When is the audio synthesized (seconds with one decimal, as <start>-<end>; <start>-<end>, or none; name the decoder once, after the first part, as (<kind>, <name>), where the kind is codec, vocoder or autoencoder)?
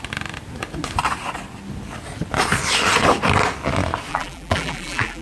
4.1-5.2 (vocoder, BigVGAN v2)